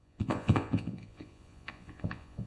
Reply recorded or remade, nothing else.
remade